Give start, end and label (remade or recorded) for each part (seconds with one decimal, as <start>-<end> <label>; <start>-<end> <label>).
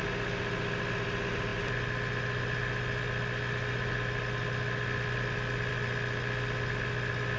0.0-7.4 recorded